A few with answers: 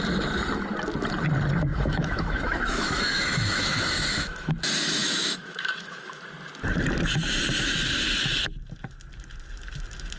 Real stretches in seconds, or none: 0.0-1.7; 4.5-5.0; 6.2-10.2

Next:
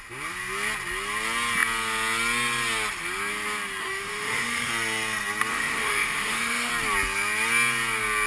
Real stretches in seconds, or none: 0.0-3.8; 4.7-5.5; 6.7-8.3

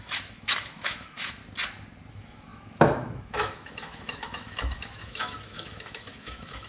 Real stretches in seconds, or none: 1.4-2.1

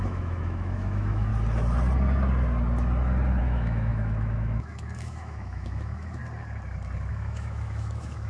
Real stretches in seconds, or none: 1.3-3.4; 6.2-7.1

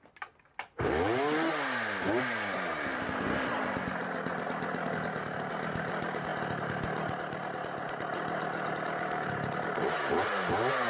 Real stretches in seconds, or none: 0.0-10.9

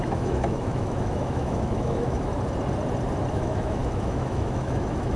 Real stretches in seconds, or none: 2.3-3.3